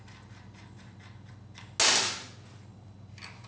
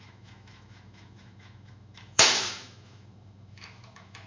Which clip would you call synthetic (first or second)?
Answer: second